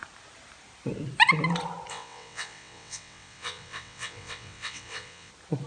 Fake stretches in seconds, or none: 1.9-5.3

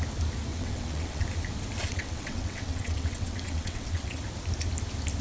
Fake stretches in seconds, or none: 0.5-1.2; 1.8-4.2

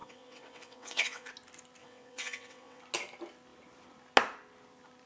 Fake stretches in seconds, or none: 0.0-1.3; 1.8-2.8